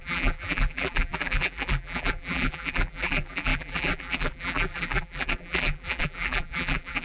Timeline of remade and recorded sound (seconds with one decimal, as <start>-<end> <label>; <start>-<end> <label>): 0.0-7.0 remade